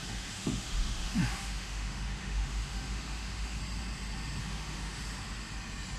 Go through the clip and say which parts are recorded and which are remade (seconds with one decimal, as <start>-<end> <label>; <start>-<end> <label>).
0.0-3.6 remade; 3.6-4.4 recorded; 4.4-5.0 remade; 5.0-6.0 recorded

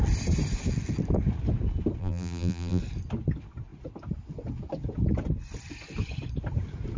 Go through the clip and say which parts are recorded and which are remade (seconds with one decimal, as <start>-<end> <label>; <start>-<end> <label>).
0.0-2.0 recorded; 2.0-2.8 remade; 2.8-7.0 recorded